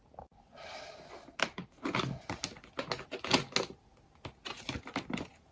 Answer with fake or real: real